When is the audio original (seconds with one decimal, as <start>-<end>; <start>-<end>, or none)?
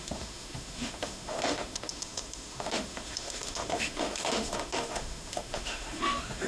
none